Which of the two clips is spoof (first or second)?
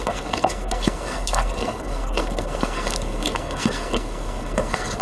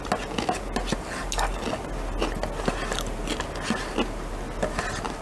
first